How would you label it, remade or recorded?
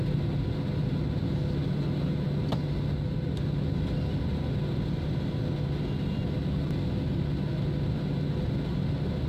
recorded